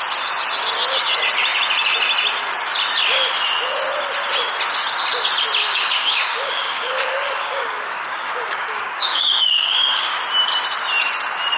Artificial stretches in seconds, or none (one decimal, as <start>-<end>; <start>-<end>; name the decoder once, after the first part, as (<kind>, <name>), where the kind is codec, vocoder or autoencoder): 5.6-10.2 (codec, DAC)